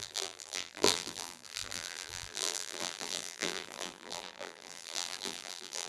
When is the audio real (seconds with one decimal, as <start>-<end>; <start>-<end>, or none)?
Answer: none